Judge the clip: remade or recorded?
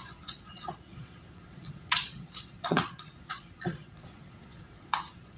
remade